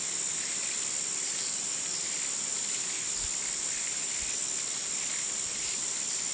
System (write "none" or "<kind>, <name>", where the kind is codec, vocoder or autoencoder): none